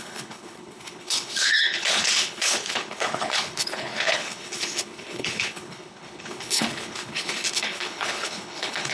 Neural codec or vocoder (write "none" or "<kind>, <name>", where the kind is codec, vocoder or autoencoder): codec, HILCodec